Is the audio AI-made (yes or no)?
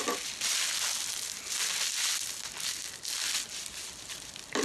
no